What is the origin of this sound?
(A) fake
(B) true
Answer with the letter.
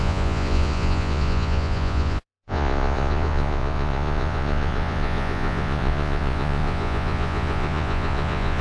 A